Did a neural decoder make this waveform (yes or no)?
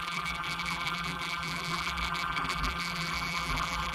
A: yes